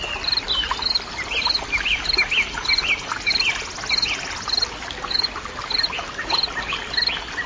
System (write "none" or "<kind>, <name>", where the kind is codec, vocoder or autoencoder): none